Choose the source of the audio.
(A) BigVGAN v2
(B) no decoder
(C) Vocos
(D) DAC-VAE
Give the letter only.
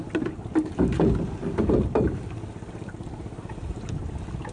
B